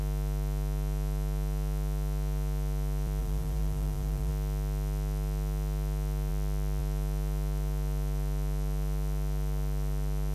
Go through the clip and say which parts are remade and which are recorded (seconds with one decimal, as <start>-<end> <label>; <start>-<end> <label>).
0.0-3.2 recorded; 3.2-4.3 remade; 4.3-10.3 recorded